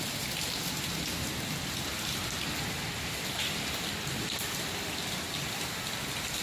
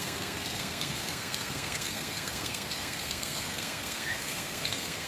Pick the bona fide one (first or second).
first